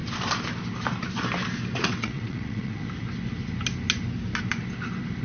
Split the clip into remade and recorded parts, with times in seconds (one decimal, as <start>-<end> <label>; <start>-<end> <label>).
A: 0.0-1.8 recorded; 1.8-2.8 remade; 2.8-5.2 recorded